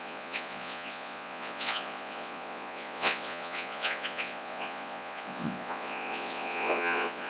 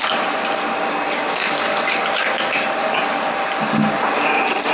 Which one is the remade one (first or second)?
first